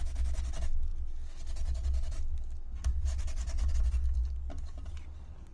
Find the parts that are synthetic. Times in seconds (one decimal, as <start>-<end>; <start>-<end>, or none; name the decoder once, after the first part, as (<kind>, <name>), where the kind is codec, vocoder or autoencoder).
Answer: none